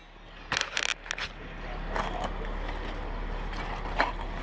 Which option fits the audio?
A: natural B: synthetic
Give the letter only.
A